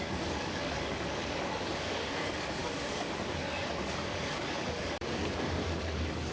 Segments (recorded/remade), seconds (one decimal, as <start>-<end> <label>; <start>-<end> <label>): 0.0-6.3 remade